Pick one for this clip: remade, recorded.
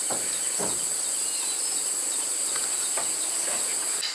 recorded